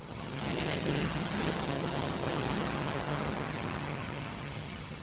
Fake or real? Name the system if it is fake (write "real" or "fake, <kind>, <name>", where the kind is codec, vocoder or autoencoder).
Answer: fake, vocoder, HiFi-GAN